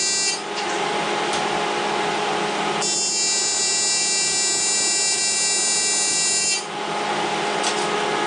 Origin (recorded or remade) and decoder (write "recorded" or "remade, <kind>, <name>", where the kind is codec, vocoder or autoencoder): recorded